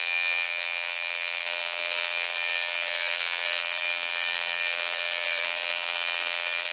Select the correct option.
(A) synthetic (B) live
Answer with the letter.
A